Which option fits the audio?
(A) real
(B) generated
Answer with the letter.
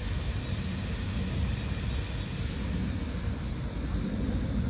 A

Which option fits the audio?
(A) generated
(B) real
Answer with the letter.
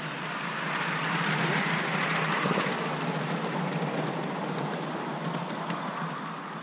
B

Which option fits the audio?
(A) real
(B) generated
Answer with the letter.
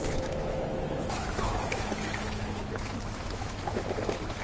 B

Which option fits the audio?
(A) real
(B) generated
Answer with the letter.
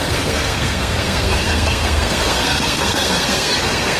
B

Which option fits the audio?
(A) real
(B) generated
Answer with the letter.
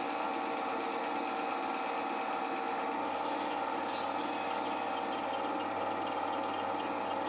A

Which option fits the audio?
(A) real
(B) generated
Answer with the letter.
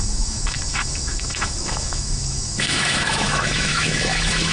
B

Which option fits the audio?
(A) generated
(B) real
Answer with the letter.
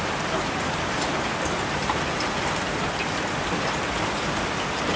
B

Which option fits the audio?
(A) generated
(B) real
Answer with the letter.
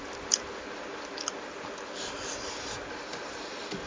B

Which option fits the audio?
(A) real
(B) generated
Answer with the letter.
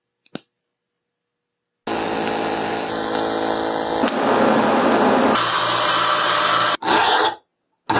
A